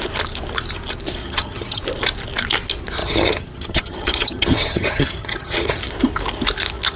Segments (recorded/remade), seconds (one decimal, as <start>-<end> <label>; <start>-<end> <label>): 0.0-1.2 recorded; 1.2-1.8 remade; 1.8-3.0 recorded; 3.0-5.7 remade; 5.7-7.0 recorded